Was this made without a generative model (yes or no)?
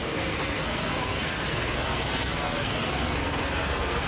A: no